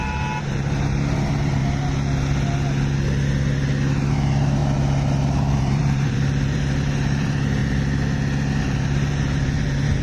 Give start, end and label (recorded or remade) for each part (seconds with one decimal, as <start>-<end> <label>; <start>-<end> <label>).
0.0-1.6 remade; 1.6-4.1 recorded; 4.1-4.6 remade; 4.6-5.6 recorded; 5.6-7.6 remade; 7.6-8.6 recorded; 8.6-10.0 remade